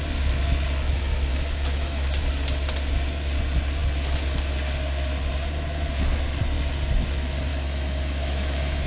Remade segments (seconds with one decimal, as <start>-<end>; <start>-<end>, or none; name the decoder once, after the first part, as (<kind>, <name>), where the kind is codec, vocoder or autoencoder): 1.3-2.2 (autoencoder, DAC-VAE); 7.5-8.9